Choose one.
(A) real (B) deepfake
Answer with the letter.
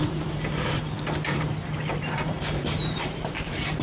B